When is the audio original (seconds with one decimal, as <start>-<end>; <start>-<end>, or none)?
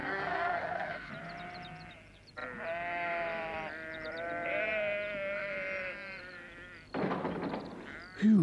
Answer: 1.1-8.4